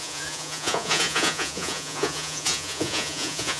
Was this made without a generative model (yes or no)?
no